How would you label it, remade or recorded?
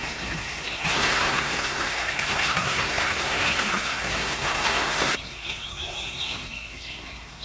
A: remade